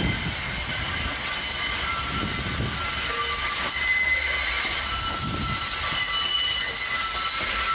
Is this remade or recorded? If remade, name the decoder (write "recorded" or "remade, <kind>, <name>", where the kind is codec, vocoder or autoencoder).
recorded